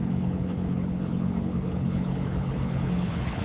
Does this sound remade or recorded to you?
remade